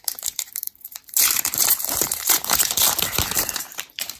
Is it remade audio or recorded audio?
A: remade